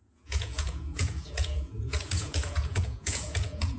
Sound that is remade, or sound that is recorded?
remade